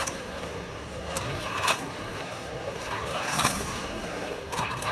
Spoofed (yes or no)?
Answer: yes